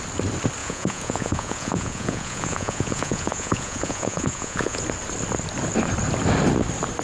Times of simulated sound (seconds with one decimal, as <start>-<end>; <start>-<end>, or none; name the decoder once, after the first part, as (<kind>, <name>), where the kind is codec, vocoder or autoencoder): 0.6-4.8 (vocoder, Vocos)